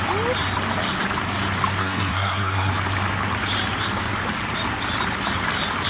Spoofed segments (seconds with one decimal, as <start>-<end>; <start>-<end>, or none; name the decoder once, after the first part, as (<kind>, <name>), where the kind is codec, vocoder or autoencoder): 1.8-2.7 (codec, SNAC)